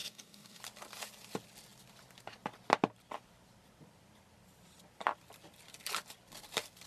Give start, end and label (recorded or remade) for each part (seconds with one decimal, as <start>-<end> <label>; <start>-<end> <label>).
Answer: 0.0-0.6 remade; 0.6-6.9 recorded